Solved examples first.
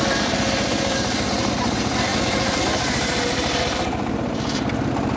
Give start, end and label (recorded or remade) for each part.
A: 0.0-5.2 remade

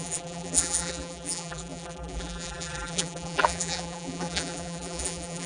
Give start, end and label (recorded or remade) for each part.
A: 0.0-5.5 remade

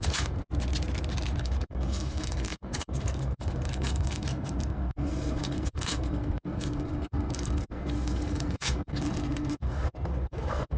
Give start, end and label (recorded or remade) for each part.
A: 0.0-0.4 remade; 0.4-1.4 recorded; 1.4-10.8 remade

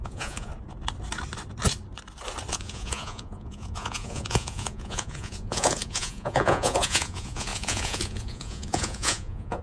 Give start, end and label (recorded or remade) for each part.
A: 0.0-0.5 remade; 0.5-2.5 recorded; 2.5-9.6 remade

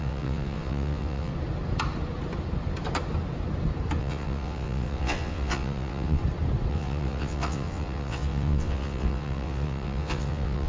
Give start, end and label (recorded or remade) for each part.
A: 0.0-1.3 remade; 1.3-4.0 recorded; 4.0-6.2 remade; 6.2-6.7 recorded; 6.7-10.7 remade

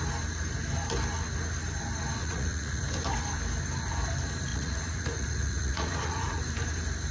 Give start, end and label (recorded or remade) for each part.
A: 0.0-2.2 recorded; 2.2-2.8 remade; 2.8-4.5 recorded; 4.5-6.4 remade; 6.4-7.1 recorded

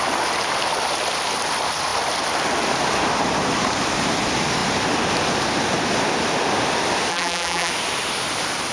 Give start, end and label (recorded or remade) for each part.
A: 0.0-7.1 recorded; 7.1-7.7 remade; 7.7-8.7 recorded